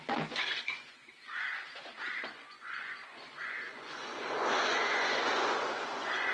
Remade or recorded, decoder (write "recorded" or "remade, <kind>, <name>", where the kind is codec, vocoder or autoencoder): remade, vocoder, Vocos